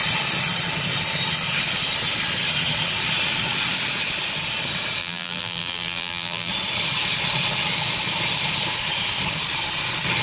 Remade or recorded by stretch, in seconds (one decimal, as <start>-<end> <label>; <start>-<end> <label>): 0.0-5.0 recorded; 5.0-6.5 remade; 6.5-10.2 recorded